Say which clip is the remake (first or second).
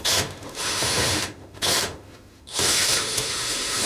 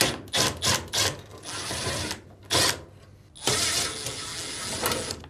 first